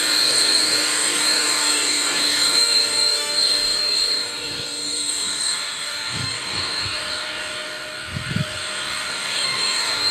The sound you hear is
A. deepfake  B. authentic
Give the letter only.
A